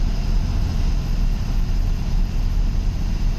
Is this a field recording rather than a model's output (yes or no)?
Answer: yes